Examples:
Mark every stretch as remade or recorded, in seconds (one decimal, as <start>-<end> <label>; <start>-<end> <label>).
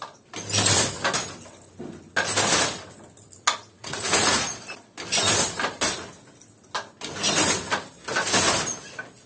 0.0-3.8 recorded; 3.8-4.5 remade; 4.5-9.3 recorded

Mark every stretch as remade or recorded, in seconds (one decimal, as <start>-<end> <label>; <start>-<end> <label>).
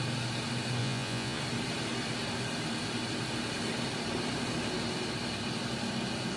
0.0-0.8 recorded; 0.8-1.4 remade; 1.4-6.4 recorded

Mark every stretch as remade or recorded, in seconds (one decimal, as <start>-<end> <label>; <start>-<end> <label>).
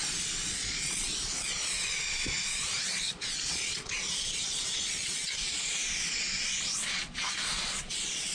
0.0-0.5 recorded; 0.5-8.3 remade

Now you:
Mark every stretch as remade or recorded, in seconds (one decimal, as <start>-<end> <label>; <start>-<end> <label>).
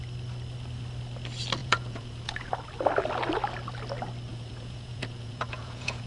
0.0-1.6 recorded; 1.6-2.5 remade; 2.5-4.3 recorded; 4.3-6.1 remade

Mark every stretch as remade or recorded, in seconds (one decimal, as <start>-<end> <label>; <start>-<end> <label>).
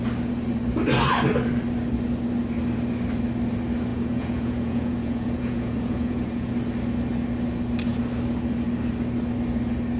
0.0-3.9 recorded; 3.9-6.5 remade; 6.5-10.0 recorded